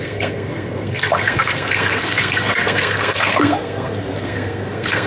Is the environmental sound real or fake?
fake